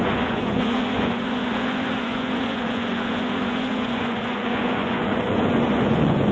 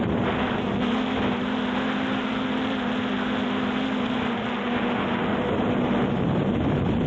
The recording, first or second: second